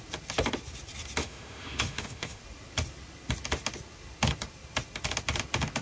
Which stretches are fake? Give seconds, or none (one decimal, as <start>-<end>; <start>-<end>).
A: 1.2-2.4